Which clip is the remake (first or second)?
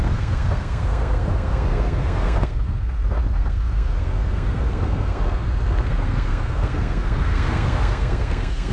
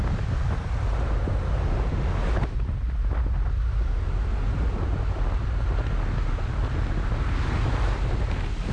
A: first